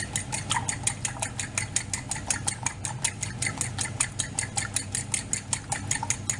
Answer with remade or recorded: recorded